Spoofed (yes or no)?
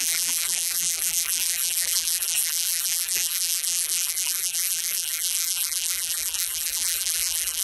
yes